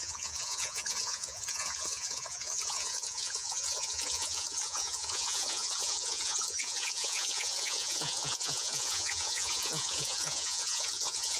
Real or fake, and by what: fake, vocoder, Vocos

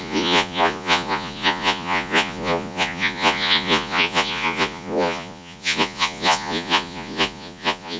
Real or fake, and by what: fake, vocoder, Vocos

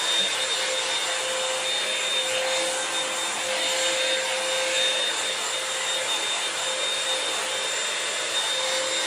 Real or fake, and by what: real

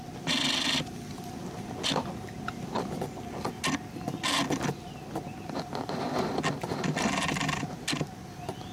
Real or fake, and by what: real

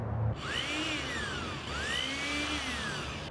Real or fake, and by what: real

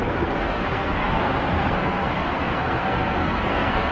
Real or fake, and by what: fake, codec, SNAC